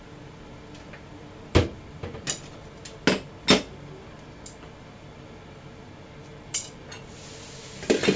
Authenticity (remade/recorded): recorded